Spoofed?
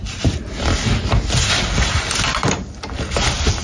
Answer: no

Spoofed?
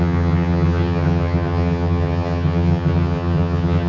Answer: yes